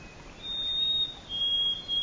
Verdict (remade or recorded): recorded